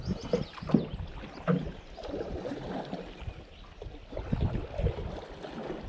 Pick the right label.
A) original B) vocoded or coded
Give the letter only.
A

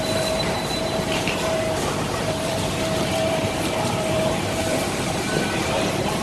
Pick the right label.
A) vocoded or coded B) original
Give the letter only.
A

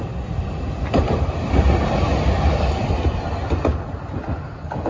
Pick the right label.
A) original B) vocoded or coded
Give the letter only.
A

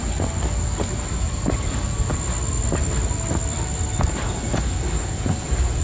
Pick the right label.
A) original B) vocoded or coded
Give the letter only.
A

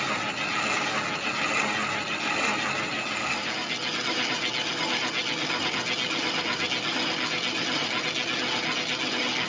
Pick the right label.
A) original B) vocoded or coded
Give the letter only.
A